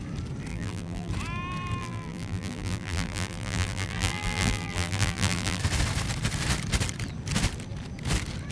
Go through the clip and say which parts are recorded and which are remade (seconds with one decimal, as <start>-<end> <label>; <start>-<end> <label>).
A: 0.0-0.5 recorded; 0.5-1.1 remade; 1.1-1.8 recorded; 1.8-5.6 remade; 5.6-8.5 recorded

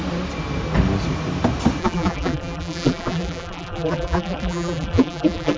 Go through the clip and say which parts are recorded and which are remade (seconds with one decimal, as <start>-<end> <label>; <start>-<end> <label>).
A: 0.0-1.8 recorded; 1.8-5.6 remade

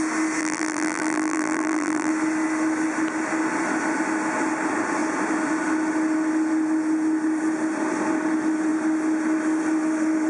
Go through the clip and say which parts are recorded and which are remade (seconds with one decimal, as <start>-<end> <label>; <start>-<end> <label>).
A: 0.0-0.4 recorded; 0.4-2.1 remade; 2.1-10.3 recorded

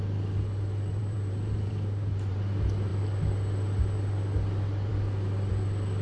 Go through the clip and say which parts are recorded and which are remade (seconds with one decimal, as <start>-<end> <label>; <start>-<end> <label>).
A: 0.0-1.0 recorded; 1.0-2.4 remade; 2.4-6.0 recorded

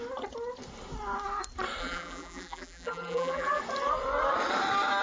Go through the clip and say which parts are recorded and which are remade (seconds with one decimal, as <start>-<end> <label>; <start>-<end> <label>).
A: 0.0-1.8 recorded; 1.8-3.6 remade; 3.6-5.0 recorded

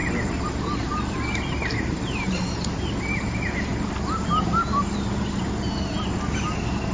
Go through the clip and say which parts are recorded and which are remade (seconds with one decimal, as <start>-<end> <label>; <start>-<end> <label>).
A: 0.0-3.0 remade; 3.0-6.9 recorded

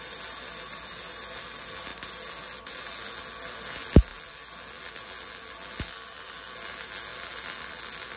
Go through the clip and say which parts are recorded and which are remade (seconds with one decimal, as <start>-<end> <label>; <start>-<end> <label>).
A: 0.0-8.2 recorded

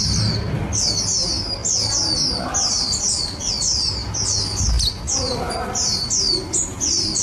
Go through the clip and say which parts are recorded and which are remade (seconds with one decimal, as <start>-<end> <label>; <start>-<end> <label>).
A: 0.0-7.2 recorded